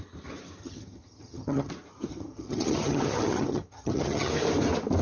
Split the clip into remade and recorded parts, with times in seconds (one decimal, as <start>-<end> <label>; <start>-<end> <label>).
0.0-0.6 recorded; 0.6-1.7 remade; 1.7-2.1 recorded; 2.1-4.3 remade; 4.3-5.0 recorded